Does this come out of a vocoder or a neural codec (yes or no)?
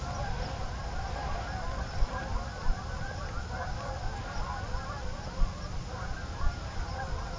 no